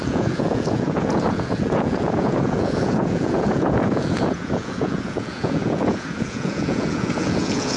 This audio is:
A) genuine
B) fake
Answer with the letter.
B